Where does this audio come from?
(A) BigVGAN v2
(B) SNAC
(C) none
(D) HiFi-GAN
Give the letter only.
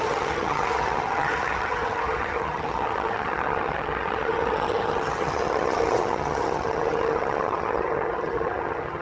D